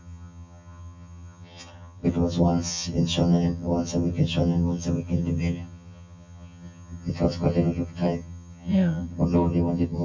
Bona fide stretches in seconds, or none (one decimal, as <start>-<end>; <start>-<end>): none